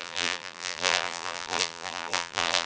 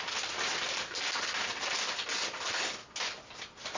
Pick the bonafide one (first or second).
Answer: second